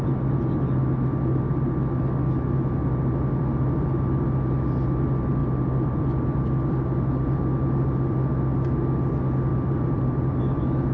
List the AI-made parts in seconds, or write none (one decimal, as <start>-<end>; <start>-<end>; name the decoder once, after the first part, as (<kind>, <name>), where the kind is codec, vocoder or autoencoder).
5.4-8.8 (vocoder, BigVGAN v2); 9.5-10.4